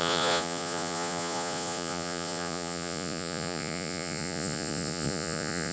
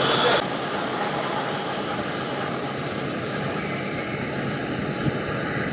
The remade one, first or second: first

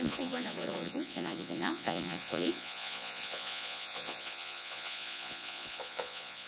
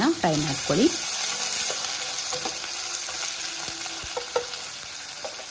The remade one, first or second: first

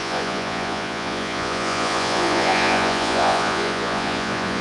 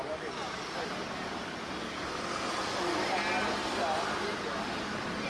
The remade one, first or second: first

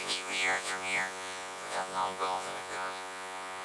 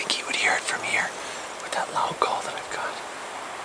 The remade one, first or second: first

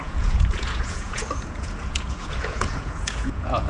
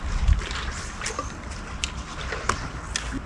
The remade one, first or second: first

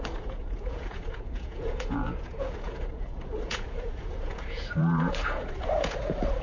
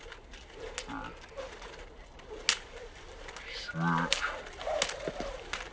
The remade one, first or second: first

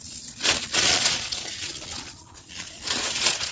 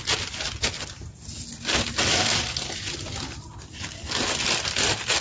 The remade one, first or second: first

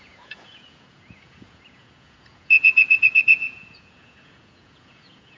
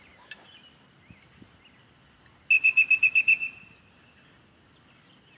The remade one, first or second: first